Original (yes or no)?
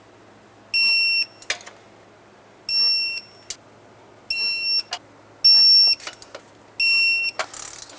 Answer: yes